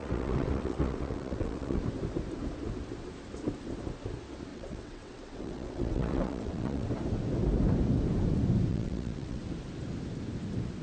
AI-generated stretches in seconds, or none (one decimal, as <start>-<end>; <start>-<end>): 0.0-1.8; 4.5-6.9; 8.7-9.4